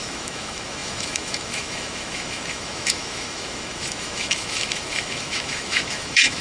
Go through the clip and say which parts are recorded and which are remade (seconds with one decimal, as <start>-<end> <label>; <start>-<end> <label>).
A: 0.0-6.4 remade